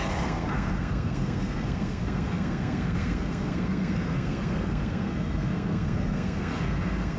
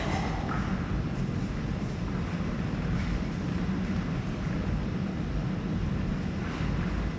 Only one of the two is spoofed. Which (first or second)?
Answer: first